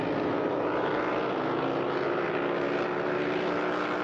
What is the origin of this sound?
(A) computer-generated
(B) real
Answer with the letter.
B